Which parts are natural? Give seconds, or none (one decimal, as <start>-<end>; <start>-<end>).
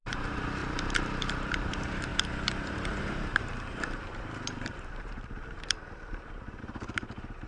none